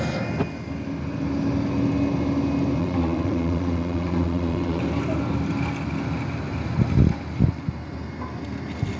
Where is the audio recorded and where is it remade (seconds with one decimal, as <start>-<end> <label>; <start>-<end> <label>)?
0.0-2.8 recorded; 2.8-4.8 remade; 4.8-9.0 recorded